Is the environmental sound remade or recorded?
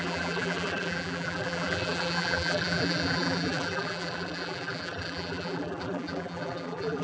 remade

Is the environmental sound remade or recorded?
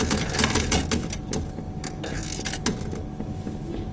recorded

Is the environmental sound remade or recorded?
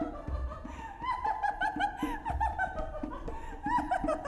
remade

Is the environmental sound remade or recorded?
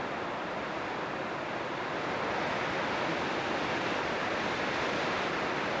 recorded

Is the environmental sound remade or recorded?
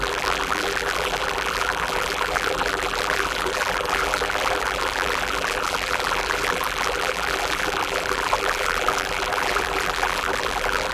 remade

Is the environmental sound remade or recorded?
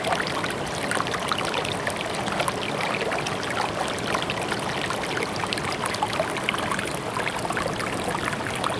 recorded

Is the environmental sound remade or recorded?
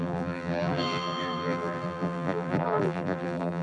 remade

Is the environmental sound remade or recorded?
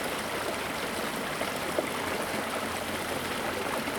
recorded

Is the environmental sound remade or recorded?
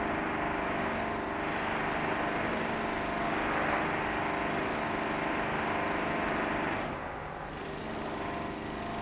recorded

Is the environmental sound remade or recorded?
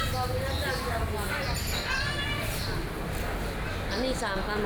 recorded